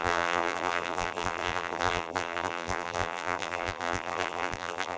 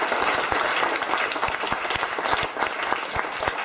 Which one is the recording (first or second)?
second